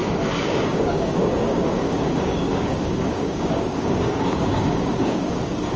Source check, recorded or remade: remade